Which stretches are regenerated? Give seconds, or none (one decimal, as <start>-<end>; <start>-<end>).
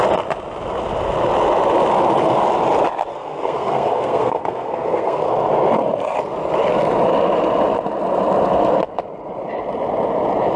3.1-5.3